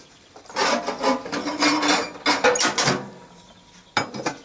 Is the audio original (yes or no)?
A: yes